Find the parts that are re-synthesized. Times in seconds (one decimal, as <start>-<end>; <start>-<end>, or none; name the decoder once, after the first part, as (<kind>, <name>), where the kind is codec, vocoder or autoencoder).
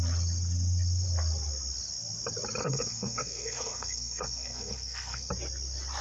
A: 2.6-5.3 (codec, SNAC)